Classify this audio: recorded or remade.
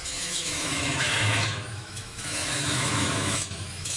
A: remade